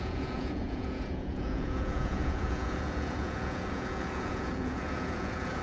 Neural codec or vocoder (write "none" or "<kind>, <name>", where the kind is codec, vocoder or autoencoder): vocoder, Vocos